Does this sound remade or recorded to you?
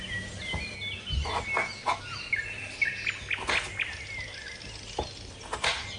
recorded